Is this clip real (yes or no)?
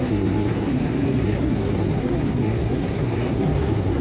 no